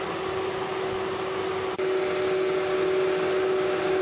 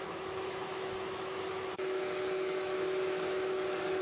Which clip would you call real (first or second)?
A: first